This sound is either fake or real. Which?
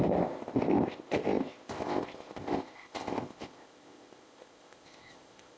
fake